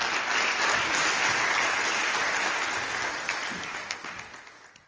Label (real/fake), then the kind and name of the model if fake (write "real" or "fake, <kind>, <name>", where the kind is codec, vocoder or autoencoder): real